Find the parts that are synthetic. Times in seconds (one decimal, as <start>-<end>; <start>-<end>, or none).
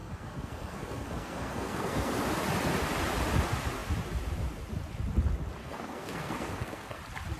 0.0-2.1; 5.6-7.0